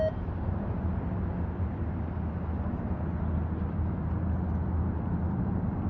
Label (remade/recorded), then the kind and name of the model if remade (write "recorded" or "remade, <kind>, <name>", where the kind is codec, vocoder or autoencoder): recorded